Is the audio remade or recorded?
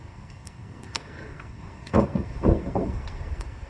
remade